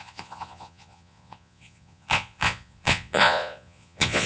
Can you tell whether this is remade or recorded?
remade